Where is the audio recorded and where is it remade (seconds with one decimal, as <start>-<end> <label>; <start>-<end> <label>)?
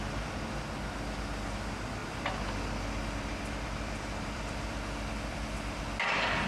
0.0-2.0 recorded; 2.0-5.8 remade; 5.8-6.5 recorded